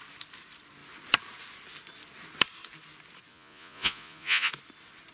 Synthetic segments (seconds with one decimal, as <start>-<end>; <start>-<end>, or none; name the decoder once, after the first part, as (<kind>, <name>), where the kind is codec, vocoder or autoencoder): 3.3-4.5 (vocoder, Vocos)